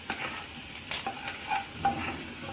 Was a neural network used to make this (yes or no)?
no